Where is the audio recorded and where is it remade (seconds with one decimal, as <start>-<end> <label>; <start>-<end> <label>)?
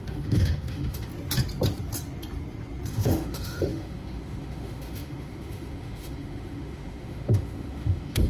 0.0-1.1 remade; 1.1-2.9 recorded; 2.9-8.3 remade